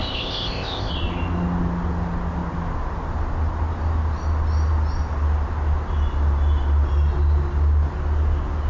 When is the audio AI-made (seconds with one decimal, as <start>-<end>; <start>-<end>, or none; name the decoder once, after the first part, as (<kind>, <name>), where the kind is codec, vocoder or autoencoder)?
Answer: 0.0-0.9 (codec, ZipCodec)